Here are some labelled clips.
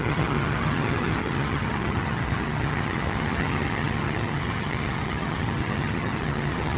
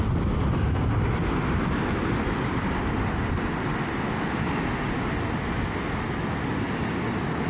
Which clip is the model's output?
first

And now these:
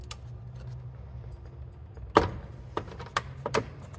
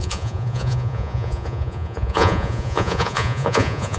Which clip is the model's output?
second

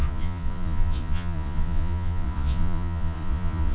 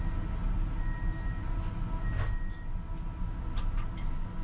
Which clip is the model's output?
first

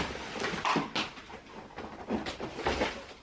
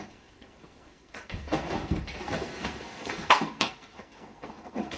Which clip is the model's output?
second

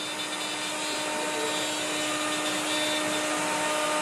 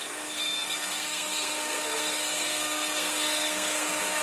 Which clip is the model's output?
second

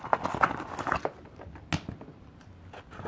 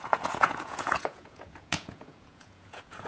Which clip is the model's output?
second